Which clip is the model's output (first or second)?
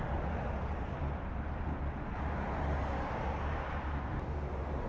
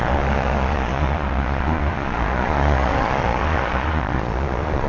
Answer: second